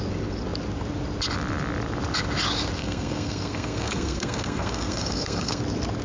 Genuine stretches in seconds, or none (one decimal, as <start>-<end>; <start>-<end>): 0.0-2.8; 5.6-6.0